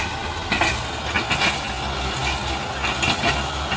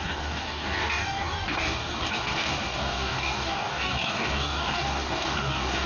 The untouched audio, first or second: first